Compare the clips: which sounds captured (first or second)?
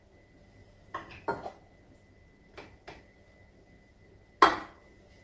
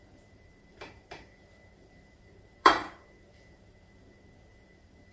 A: first